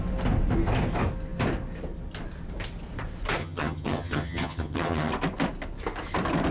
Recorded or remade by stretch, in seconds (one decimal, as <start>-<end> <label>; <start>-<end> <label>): 0.0-3.4 recorded; 3.4-5.1 remade; 5.1-6.5 recorded